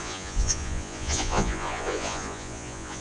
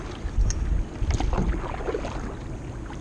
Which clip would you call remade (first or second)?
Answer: first